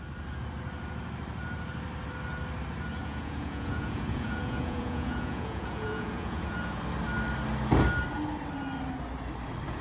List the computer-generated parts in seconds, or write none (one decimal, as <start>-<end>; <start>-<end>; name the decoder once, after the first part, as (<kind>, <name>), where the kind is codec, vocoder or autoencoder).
3.0-6.8 (vocoder, Vocos)